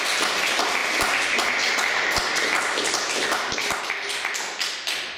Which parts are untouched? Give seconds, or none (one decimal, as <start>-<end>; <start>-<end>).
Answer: 0.0-5.2

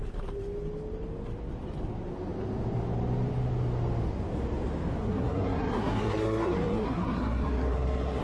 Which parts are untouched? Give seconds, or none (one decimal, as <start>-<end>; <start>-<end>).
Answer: 0.0-5.0

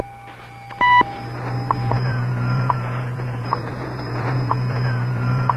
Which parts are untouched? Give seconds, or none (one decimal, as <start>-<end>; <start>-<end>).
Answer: 0.0-1.8

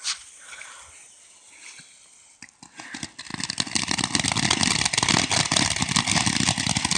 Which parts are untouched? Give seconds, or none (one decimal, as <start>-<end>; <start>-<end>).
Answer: 0.0-7.0